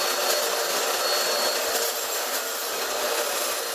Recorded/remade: recorded